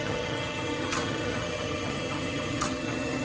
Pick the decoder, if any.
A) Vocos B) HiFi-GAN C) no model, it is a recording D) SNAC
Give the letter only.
B